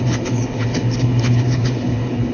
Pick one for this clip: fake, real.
fake